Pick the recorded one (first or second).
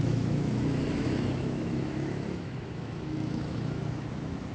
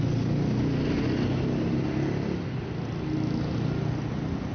second